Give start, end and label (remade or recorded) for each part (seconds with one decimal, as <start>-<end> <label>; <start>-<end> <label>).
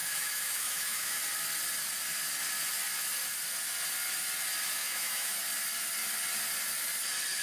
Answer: 0.0-1.2 remade; 1.2-4.8 recorded; 4.8-5.4 remade; 5.4-7.4 recorded